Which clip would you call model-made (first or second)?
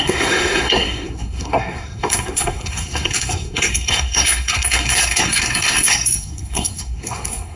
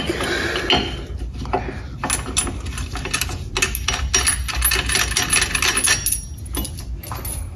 first